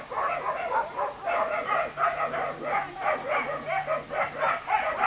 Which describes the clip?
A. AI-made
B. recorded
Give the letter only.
B